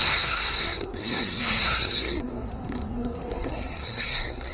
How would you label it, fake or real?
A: fake